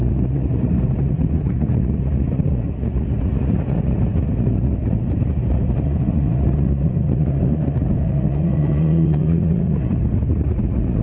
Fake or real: fake